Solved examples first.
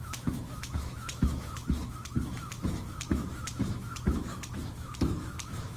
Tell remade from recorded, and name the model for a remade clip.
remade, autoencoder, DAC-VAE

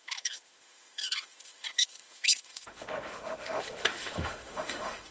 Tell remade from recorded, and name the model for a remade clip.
remade, autoencoder, DAC-VAE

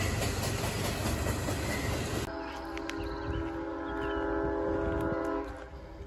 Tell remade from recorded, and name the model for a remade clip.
recorded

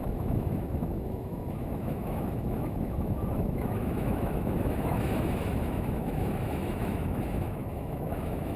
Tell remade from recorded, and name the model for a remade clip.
remade, autoencoder, DAC-VAE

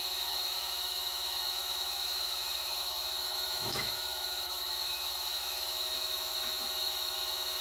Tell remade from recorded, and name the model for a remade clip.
remade, autoencoder, DAC-VAE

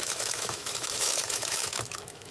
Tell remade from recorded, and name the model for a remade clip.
remade, autoencoder, DAC-VAE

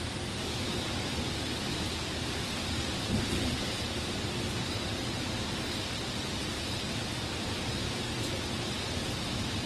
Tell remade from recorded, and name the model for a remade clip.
recorded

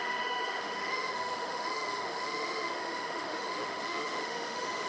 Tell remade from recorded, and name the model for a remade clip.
remade, autoencoder, DAC-VAE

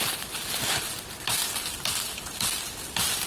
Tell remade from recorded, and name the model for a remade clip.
recorded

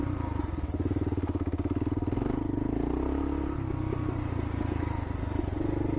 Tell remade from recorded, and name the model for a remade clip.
recorded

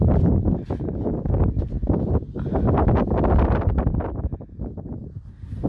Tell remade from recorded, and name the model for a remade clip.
recorded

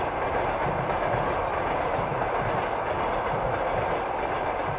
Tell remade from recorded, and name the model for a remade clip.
recorded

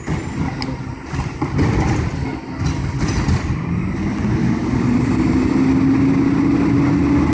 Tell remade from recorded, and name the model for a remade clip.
recorded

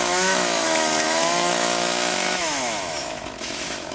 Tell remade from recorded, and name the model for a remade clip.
remade, autoencoder, DAC-VAE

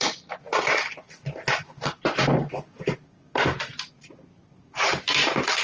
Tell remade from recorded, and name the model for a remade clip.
recorded